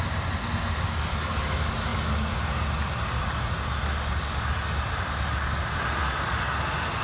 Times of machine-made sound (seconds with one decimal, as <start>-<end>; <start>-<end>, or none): none